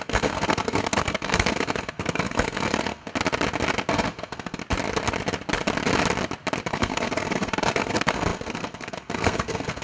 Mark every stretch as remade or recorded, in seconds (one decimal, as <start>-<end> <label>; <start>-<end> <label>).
0.0-3.1 remade; 3.1-3.9 recorded; 3.9-4.6 remade; 4.6-6.7 recorded; 6.7-9.8 remade